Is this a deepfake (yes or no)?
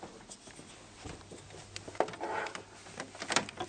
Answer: no